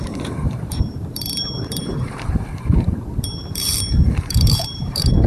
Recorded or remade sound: remade